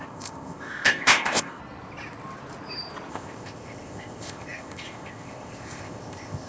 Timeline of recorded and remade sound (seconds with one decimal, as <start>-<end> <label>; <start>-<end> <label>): 0.0-1.6 remade; 1.6-3.1 recorded; 3.1-6.5 remade